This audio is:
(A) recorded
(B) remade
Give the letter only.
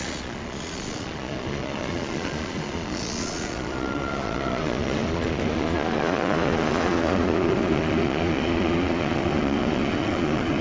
B